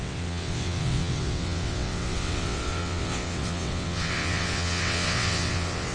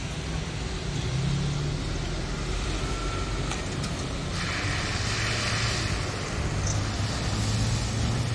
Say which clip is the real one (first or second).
second